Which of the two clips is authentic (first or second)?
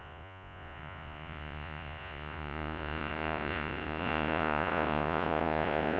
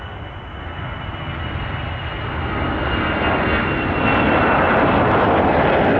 second